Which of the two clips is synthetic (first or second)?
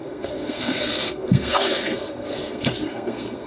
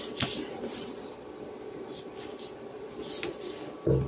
first